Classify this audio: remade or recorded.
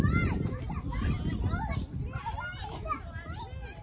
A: remade